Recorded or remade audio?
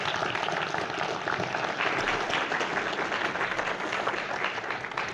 recorded